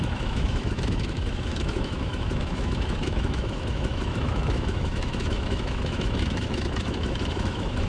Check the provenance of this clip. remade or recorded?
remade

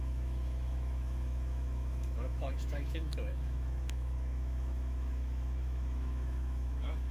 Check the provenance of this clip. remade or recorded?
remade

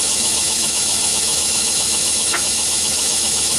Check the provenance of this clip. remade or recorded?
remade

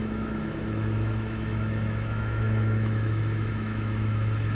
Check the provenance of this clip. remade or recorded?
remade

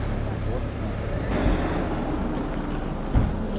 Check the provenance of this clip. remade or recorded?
recorded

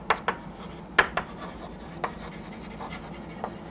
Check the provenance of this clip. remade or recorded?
recorded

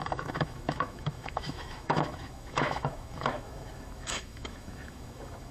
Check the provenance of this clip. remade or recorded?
remade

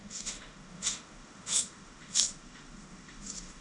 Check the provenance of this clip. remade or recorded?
remade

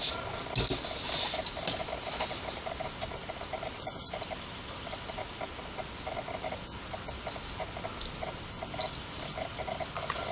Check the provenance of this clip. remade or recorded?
recorded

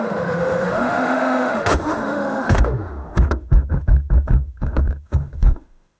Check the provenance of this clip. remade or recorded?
remade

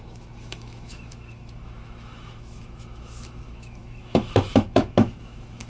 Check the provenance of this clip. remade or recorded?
remade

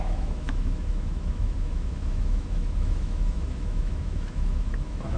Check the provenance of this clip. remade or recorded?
remade